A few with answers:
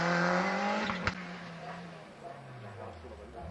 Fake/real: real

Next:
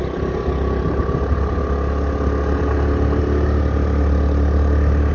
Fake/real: real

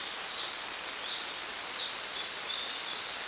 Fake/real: real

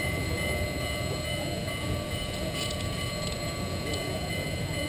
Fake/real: fake